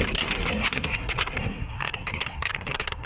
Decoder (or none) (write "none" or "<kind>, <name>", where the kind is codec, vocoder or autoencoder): codec, SNAC